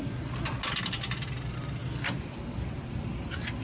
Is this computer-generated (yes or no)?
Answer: no